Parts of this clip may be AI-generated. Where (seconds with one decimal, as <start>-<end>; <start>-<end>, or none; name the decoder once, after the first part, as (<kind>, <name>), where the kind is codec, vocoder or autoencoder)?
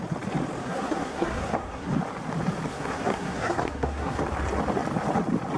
0.6-1.9 (codec, SNAC); 2.7-4.2